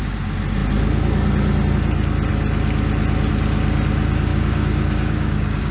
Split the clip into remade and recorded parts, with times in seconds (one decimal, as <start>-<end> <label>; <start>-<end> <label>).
0.0-4.3 recorded; 4.3-5.7 remade